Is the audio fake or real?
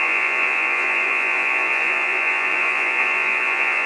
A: fake